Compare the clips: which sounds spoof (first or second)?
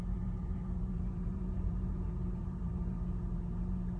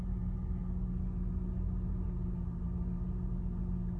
first